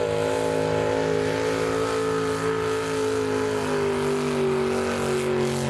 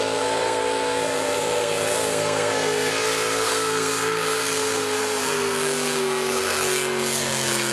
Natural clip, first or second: first